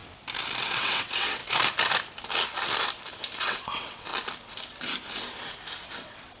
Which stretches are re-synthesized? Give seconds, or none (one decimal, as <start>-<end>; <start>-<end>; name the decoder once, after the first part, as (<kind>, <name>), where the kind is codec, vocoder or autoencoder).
0.6-1.4 (vocoder, WaveNeXt); 3.4-4.1; 5.9-6.4